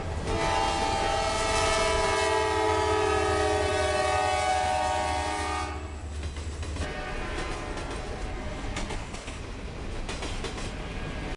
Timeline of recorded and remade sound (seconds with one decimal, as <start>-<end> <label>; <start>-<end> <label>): 0.0-8.3 recorded; 8.3-9.4 remade; 9.4-11.4 recorded